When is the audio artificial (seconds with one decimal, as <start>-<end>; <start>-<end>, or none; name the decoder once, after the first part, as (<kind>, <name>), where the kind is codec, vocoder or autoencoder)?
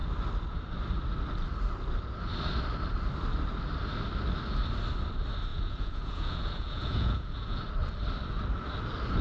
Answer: 5.5-7.6 (vocoder, Vocos)